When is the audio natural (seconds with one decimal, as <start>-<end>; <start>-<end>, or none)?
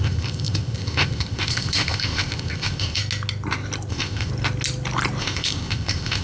3.0-3.9; 4.3-5.2